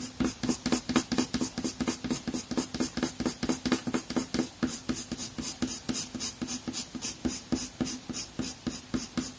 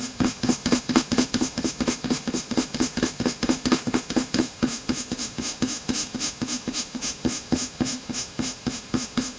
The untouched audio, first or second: first